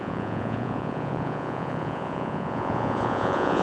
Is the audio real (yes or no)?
no